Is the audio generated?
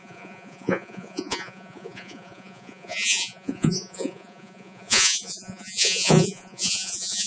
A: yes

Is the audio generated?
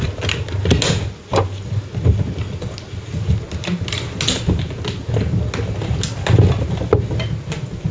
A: no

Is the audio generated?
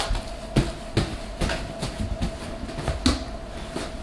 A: no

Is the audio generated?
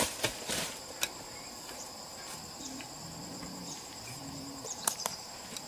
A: yes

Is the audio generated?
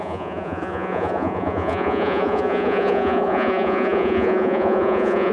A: yes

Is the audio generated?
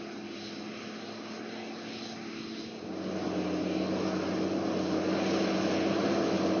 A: no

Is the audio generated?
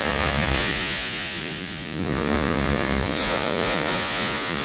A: yes